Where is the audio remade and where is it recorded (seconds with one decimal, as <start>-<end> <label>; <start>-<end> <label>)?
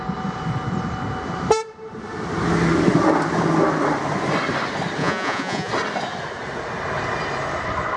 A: 0.0-5.0 recorded; 5.0-5.7 remade; 5.7-8.0 recorded